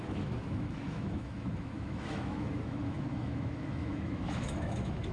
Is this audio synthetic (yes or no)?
yes